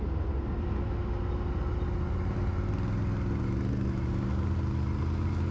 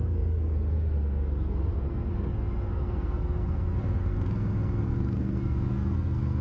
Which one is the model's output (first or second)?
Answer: second